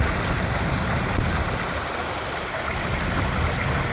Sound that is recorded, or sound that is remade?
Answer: recorded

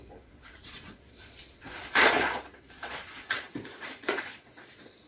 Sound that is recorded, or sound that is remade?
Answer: remade